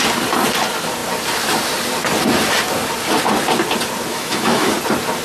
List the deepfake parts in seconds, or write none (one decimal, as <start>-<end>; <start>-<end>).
4.1-4.7